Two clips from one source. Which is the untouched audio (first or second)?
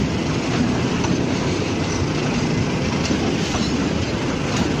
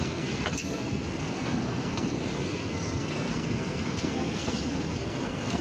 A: first